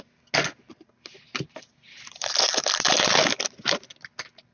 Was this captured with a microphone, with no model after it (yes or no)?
yes